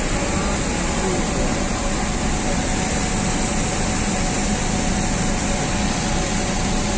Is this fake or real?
fake